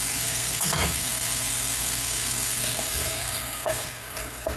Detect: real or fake fake